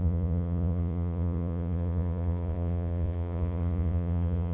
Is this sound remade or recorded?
remade